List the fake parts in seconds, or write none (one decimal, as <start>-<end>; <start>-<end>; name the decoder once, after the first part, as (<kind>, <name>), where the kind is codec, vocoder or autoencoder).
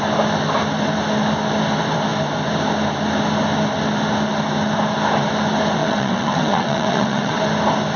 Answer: 5.8-7.4 (vocoder, WaveNeXt)